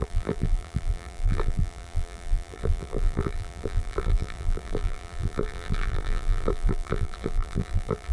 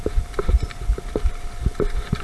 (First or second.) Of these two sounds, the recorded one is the second